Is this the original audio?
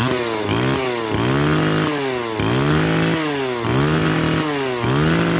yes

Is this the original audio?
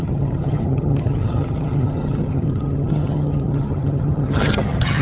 no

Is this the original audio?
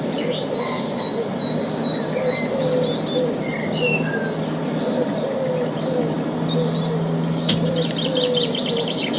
yes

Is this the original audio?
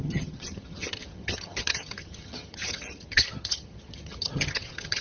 no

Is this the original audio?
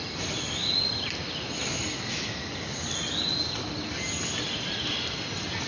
yes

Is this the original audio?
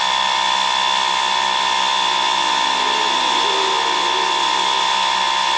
yes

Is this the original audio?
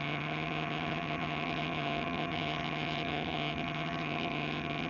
no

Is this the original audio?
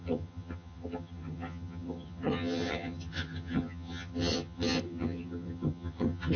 no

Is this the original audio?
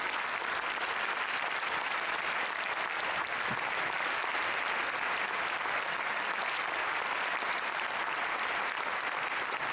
yes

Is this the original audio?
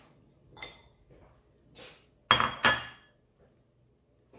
yes